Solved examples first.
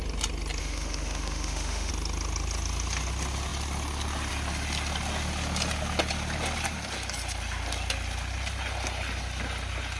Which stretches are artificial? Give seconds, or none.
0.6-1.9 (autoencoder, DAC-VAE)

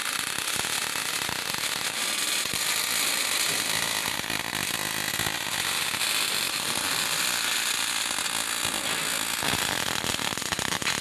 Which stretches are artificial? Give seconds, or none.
none

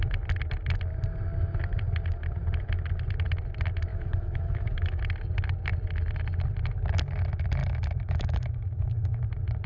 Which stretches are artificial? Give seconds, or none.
3.9-5.0 (autoencoder, DAC-VAE); 7.6-9.2